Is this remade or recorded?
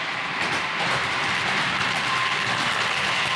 recorded